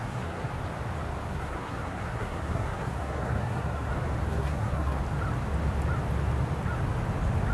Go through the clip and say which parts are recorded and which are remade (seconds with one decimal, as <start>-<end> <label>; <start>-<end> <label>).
0.0-0.5 remade; 0.5-1.3 recorded; 1.3-3.9 remade; 3.9-4.3 recorded; 4.3-5.0 remade; 5.0-7.5 recorded